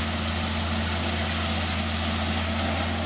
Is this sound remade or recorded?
recorded